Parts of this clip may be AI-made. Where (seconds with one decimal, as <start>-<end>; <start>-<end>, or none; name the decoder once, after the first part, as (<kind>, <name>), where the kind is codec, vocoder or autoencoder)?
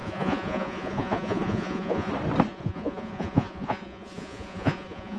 0.0-2.1 (vocoder, Vocos); 2.5-5.2